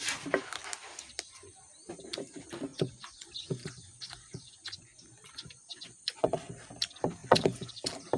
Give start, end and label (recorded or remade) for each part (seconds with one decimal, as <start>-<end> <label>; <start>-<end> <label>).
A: 0.0-2.7 recorded; 2.7-6.5 remade; 6.5-7.2 recorded; 7.2-7.7 remade; 7.7-8.2 recorded